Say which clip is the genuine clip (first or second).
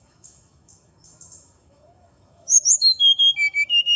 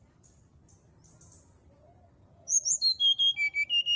second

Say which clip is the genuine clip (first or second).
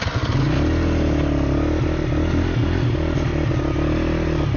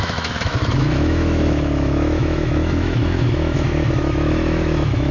first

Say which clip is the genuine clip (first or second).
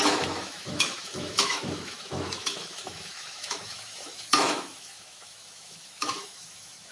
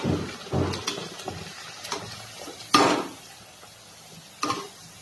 second